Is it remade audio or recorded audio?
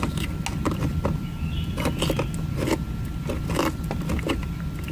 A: recorded